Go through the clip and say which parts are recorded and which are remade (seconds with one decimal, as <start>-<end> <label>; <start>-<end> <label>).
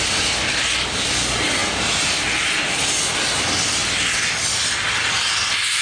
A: 0.0-5.8 recorded